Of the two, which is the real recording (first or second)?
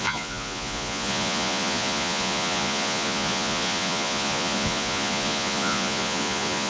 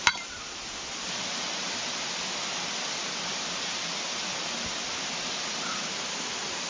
second